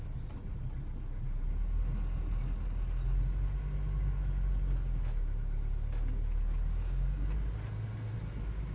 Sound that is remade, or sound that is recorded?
recorded